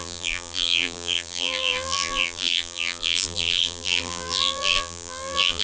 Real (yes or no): no